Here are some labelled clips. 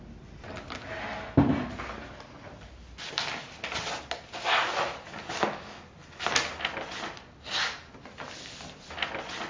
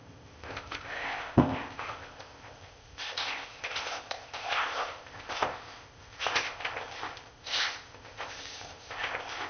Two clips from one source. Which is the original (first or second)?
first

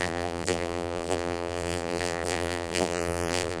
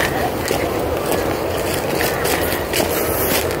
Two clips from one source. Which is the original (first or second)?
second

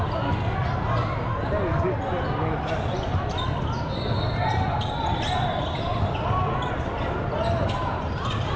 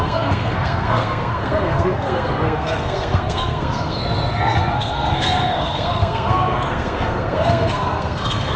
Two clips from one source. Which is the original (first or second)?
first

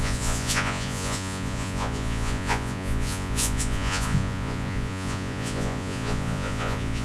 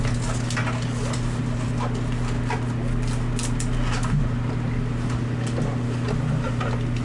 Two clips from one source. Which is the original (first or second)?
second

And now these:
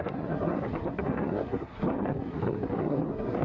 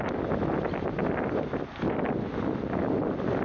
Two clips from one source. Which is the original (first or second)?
second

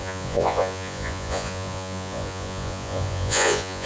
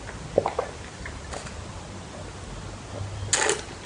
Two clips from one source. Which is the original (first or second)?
second